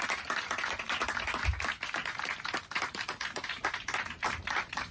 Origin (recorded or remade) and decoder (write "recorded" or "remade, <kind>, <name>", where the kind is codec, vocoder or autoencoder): recorded